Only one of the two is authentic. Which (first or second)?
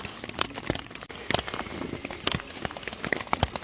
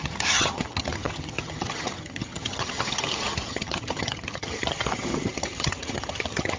first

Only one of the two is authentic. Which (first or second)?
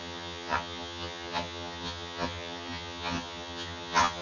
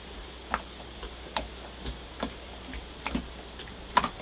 second